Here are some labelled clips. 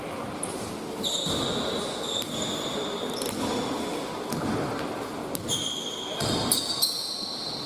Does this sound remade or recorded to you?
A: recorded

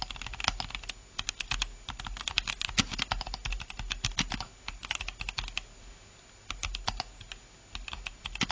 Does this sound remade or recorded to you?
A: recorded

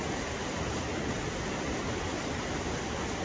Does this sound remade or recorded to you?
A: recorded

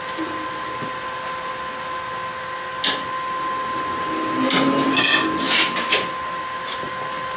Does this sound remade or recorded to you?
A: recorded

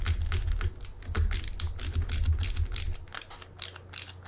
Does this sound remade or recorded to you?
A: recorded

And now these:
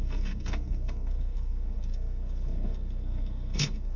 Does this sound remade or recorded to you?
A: remade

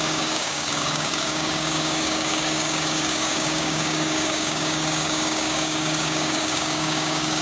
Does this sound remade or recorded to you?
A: remade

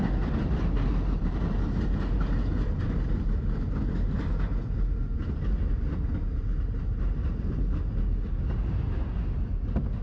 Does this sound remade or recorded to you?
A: recorded